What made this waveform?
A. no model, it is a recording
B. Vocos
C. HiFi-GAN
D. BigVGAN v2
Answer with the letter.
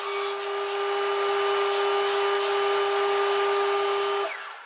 A